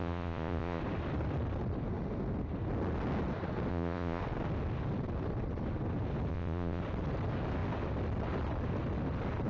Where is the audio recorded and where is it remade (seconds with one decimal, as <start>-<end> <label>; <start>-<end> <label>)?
0.0-0.8 remade; 0.8-3.7 recorded; 3.7-4.2 remade; 4.2-6.3 recorded; 6.3-6.8 remade; 6.8-9.5 recorded